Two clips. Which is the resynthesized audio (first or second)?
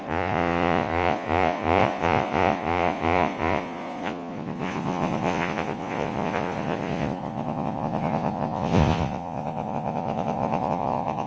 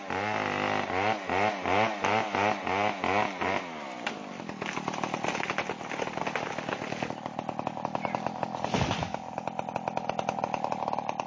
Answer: first